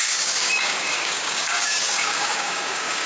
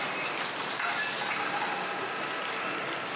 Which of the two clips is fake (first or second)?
first